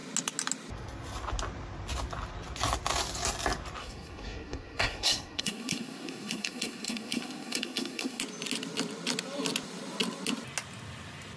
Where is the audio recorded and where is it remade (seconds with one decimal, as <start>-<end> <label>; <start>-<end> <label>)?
0.0-3.8 recorded; 3.8-8.2 remade; 8.2-11.4 recorded